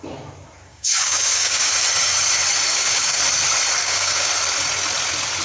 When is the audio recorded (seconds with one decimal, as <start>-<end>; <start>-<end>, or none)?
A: 0.0-0.7; 1.7-2.7; 3.2-3.8; 4.3-5.4